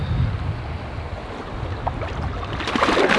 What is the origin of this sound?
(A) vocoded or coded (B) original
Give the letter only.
B